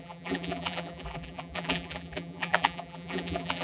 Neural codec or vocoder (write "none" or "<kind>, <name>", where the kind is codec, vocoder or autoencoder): vocoder, BigVGAN v2